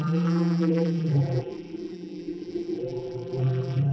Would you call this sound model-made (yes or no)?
yes